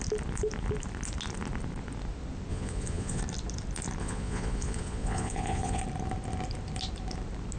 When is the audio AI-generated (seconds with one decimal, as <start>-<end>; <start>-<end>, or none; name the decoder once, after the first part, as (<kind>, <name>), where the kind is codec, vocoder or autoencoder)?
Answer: 2.5-3.2 (vocoder, Vocos); 4.0-5.8